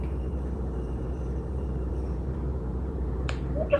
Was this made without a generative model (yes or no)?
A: no